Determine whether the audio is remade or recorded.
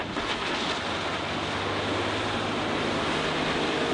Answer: recorded